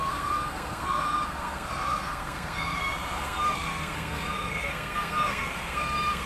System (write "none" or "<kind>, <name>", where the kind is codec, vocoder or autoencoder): codec, SNAC